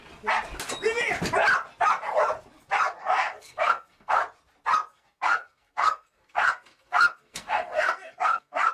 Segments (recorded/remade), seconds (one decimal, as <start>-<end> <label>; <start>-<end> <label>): 0.0-3.0 recorded; 3.0-4.2 remade; 4.2-4.9 recorded; 4.9-8.7 remade